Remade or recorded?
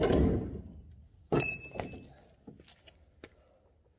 recorded